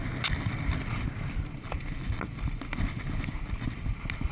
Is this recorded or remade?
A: recorded